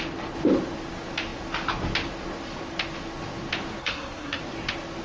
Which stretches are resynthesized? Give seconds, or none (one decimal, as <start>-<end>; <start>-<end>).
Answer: 3.8-4.4